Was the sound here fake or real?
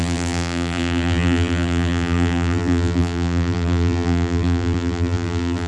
fake